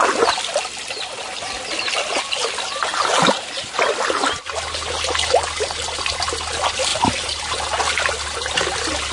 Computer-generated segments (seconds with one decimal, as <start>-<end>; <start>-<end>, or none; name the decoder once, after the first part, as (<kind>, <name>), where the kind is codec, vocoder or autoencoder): 6.9-7.8 (vocoder, BigVGAN v2)